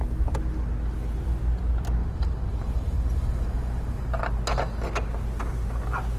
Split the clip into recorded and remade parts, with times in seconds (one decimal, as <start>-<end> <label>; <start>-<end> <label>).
0.0-2.0 recorded; 2.0-4.2 remade; 4.2-6.2 recorded